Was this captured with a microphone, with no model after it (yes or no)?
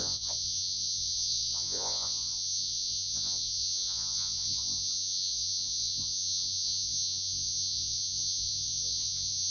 no